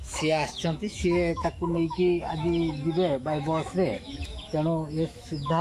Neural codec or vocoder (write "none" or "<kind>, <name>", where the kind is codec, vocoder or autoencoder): autoencoder, DAC-VAE